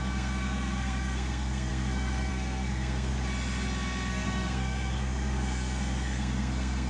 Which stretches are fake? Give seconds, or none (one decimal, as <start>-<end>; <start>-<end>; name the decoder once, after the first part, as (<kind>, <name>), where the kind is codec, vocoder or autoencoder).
0.0-3.1 (codec, SNAC); 4.1-6.9